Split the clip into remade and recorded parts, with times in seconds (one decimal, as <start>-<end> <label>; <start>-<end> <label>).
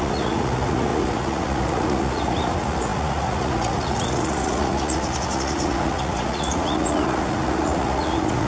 0.0-8.5 remade